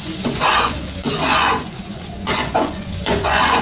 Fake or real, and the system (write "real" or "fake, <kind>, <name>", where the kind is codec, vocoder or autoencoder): fake, vocoder, Vocos